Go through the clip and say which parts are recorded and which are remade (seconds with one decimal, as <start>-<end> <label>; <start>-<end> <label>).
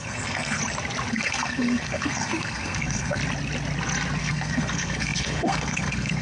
0.0-0.6 remade; 0.6-1.1 recorded; 1.1-3.2 remade; 3.2-4.2 recorded; 4.2-6.2 remade